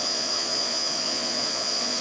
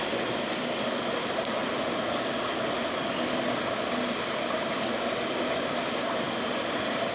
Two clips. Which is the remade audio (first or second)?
first